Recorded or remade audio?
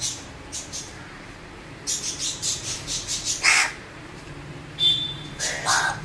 remade